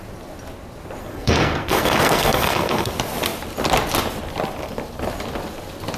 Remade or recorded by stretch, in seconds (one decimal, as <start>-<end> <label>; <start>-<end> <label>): 0.0-1.0 recorded; 1.0-2.9 remade; 2.9-6.0 recorded